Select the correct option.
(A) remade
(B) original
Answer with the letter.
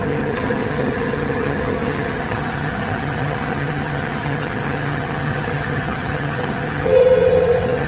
A